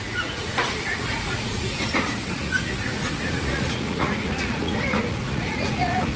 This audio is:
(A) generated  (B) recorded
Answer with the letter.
A